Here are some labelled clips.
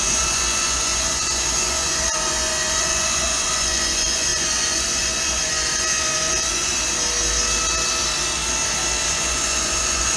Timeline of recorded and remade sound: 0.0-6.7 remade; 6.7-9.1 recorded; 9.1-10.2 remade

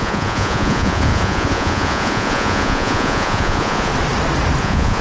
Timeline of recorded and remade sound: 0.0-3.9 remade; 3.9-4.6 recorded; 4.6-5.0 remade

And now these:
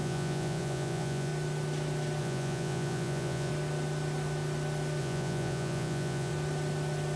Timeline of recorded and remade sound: 0.0-1.3 remade; 1.3-2.2 recorded; 2.2-3.5 remade; 3.5-5.0 recorded; 5.0-6.3 remade; 6.3-7.2 recorded

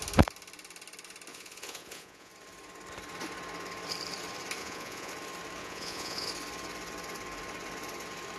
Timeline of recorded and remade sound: 0.0-1.3 recorded; 1.3-2.3 remade; 2.3-4.6 recorded; 4.6-5.1 remade; 5.1-5.6 recorded; 5.6-6.3 remade; 6.3-8.4 recorded